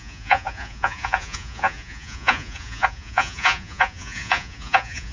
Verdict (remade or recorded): remade